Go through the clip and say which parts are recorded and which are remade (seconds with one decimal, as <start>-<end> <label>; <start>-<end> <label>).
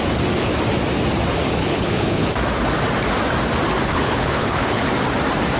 0.0-1.6 recorded; 1.6-2.3 remade; 2.3-3.9 recorded; 3.9-4.8 remade; 4.8-5.6 recorded